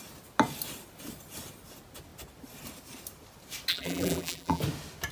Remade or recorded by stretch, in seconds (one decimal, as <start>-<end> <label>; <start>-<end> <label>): 0.0-3.7 recorded; 3.7-4.6 remade; 4.6-5.1 recorded